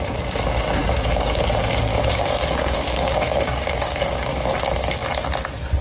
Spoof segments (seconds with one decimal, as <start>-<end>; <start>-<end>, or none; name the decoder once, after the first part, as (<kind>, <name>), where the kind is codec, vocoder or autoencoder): 0.8-1.4 (codec, DAC); 1.9-4.3